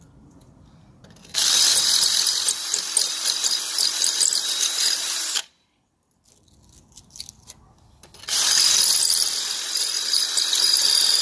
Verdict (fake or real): real